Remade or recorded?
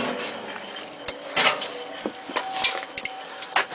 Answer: recorded